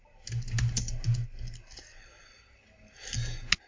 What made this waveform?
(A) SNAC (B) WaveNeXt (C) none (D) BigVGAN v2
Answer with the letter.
C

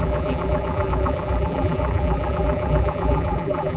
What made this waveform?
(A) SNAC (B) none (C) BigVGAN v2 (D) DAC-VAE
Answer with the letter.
C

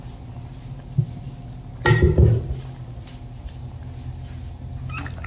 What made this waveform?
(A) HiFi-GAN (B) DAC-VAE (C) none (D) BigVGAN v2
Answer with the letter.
C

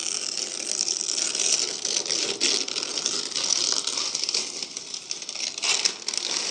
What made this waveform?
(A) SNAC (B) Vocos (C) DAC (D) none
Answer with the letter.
D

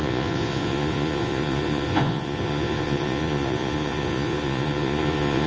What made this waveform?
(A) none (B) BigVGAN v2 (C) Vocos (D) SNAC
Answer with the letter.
C